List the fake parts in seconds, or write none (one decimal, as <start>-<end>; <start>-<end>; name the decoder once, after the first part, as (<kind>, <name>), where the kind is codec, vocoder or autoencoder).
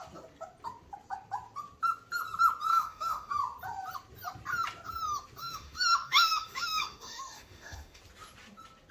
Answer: 2.7-3.3 (autoencoder, DAC-VAE); 5.4-8.0